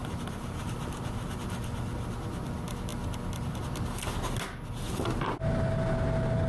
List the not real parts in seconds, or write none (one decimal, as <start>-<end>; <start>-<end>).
0.0-0.8